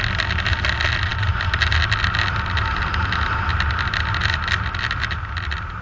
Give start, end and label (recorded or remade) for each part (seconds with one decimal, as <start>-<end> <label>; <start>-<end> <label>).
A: 0.0-5.8 recorded